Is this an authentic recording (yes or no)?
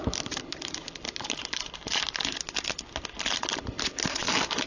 yes